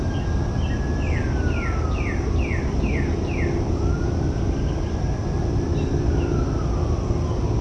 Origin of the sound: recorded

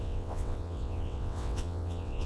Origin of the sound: remade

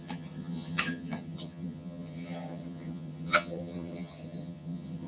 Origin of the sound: remade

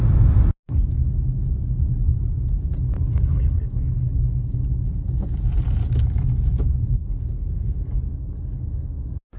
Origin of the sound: recorded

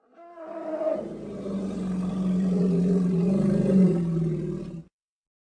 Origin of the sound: remade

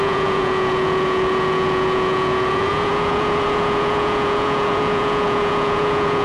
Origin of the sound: remade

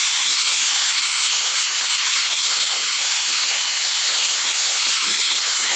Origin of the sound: remade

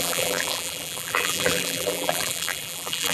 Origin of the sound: remade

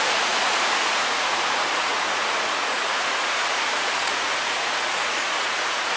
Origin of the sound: remade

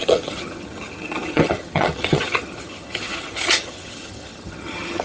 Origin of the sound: remade